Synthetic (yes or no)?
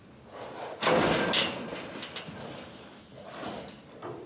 no